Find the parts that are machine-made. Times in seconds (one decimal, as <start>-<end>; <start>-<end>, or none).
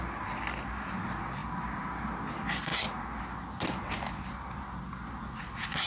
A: none